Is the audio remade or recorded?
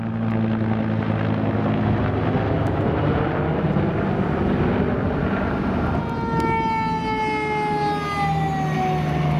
recorded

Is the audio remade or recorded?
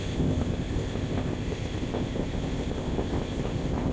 remade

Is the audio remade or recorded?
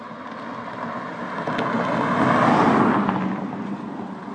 recorded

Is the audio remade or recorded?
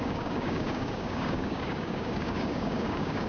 remade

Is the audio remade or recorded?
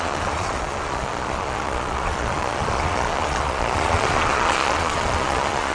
remade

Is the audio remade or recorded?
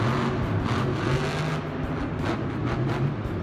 recorded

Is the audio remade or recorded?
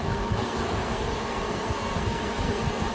remade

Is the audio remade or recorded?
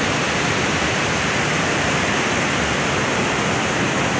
recorded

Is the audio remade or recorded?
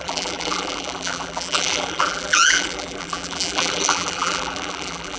remade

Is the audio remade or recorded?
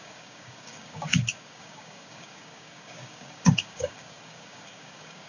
remade